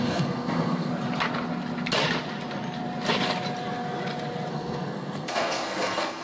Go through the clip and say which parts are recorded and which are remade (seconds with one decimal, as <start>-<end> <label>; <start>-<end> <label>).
0.0-0.9 remade; 0.9-4.5 recorded; 4.5-6.2 remade